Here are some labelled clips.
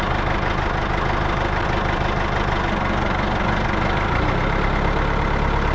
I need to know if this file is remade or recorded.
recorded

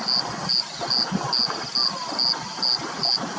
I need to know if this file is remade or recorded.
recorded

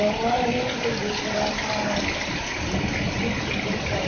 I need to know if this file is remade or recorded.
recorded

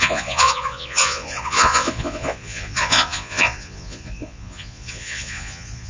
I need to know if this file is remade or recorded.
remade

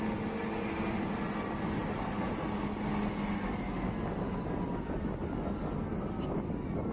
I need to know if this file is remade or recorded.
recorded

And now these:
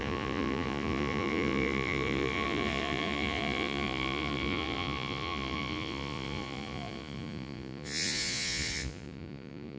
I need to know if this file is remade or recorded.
remade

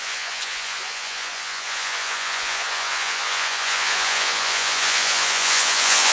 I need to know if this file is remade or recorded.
remade